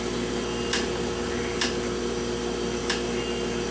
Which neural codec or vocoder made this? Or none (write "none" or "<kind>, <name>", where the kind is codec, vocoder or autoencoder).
none